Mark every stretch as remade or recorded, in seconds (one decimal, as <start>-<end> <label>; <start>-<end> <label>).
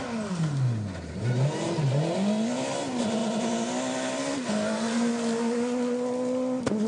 0.0-6.9 recorded